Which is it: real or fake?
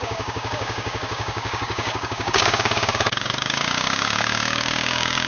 fake